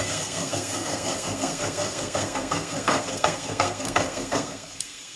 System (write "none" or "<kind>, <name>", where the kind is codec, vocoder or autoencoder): codec, SNAC